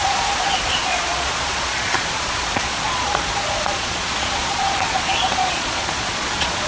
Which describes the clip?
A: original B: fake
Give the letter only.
B